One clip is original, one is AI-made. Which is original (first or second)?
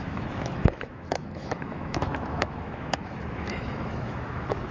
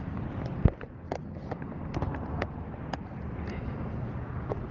second